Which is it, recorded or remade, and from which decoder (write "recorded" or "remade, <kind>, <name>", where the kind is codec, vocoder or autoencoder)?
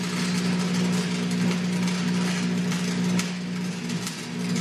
recorded